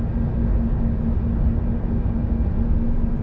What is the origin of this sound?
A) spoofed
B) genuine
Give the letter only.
B